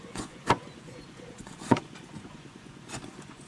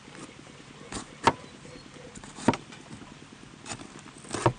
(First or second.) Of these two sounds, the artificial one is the first